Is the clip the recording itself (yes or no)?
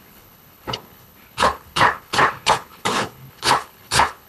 no